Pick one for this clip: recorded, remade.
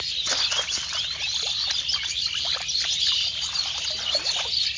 recorded